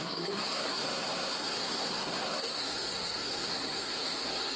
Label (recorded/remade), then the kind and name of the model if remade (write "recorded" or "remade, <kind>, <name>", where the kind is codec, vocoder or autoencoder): remade, codec, SNAC